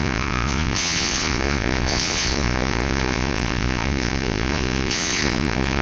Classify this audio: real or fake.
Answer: fake